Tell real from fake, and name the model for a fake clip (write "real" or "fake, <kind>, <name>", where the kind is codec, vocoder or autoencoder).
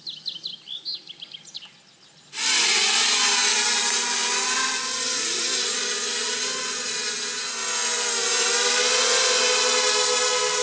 real